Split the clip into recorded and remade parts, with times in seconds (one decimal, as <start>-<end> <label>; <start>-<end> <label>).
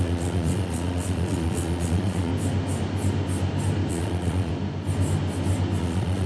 0.0-2.3 remade; 2.3-3.9 recorded; 3.9-4.5 remade; 4.5-5.8 recorded; 5.8-6.3 remade